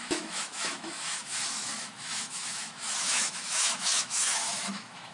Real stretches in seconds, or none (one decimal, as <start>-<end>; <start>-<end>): none